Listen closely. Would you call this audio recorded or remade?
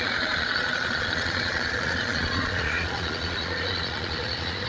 remade